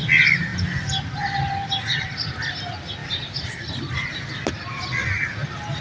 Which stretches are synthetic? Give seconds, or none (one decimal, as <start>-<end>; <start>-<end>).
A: 3.0-3.6